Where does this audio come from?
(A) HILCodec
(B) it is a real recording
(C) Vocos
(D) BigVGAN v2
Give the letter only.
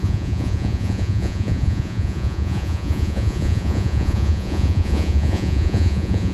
C